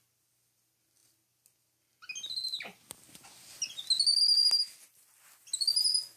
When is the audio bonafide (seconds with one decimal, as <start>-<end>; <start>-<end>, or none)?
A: 0.0-6.2